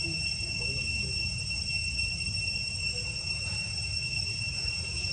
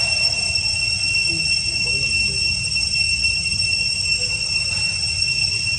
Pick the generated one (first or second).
first